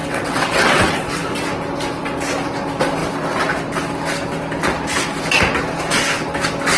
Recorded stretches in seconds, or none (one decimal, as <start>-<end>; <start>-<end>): 1.2-6.8